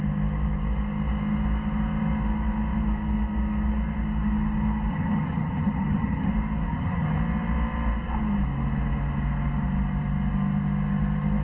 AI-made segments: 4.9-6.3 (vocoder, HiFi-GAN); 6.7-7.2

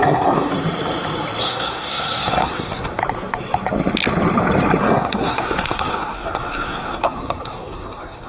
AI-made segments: 0.0-0.5 (codec, SNAC); 1.4-3.0; 4.8-8.3

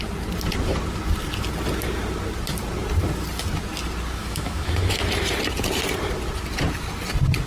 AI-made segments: 4.2-5.0 (autoencoder, DAC-VAE)

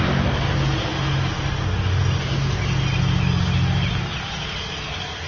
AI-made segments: none

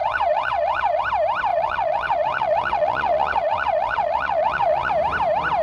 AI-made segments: 0.0-1.0 (vocoder, WaveNeXt); 1.5-4.9